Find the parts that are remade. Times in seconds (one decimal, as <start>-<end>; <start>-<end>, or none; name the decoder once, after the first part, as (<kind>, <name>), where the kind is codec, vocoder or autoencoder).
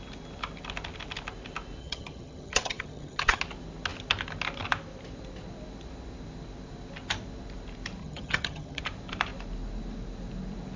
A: 1.8-3.4 (vocoder, HiFi-GAN); 8.0-8.8